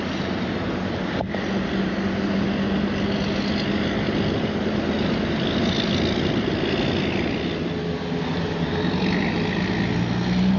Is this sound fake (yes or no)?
no